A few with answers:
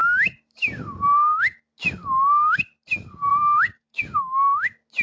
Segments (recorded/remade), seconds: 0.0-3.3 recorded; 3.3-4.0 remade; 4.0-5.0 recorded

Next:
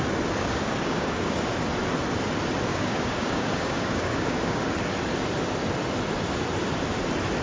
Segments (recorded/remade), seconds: 0.0-0.4 recorded; 0.4-1.5 remade; 1.5-2.7 recorded; 2.7-4.8 remade; 4.8-7.4 recorded

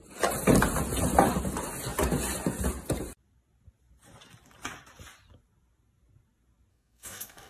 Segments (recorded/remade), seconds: 0.0-6.7 recorded; 6.7-7.5 remade

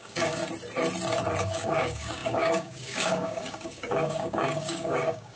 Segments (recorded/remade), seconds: 0.0-0.4 remade; 0.4-1.4 recorded; 1.4-5.4 remade

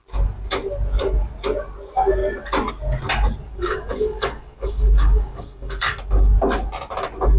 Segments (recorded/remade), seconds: 0.0-3.5 recorded; 3.5-6.0 remade; 6.0-7.4 recorded

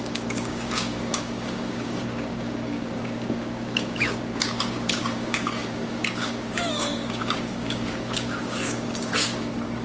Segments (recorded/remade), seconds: 0.0-9.8 remade